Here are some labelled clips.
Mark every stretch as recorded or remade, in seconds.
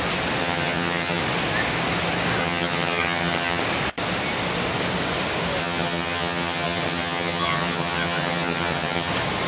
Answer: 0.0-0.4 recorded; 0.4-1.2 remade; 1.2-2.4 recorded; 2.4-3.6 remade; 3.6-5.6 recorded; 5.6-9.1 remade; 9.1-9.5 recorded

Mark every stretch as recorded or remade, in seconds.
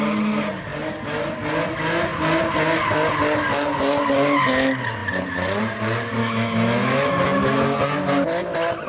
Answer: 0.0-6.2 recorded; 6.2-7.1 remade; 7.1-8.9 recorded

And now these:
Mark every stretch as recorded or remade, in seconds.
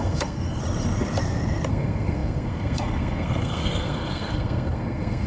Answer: 0.0-0.6 remade; 0.6-1.7 recorded; 1.7-5.3 remade